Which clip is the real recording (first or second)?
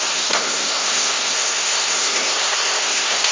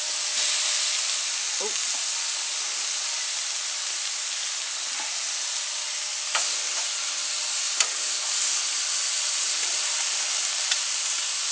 second